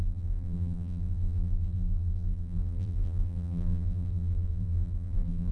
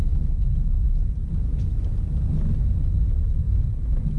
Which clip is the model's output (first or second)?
first